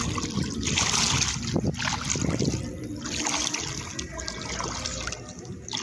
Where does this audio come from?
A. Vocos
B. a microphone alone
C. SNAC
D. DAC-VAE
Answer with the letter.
B